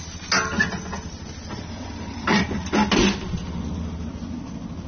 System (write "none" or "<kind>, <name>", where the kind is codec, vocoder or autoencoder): none